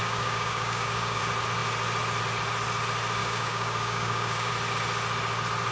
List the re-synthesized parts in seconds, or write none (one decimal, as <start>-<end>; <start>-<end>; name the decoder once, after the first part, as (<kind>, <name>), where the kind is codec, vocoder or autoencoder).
0.0-1.2 (codec, DAC); 3.2-4.5